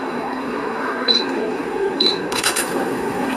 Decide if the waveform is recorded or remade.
remade